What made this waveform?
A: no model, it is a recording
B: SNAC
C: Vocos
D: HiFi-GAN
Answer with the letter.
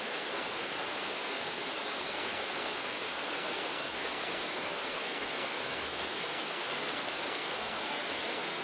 B